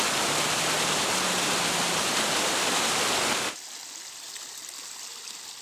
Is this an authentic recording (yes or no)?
yes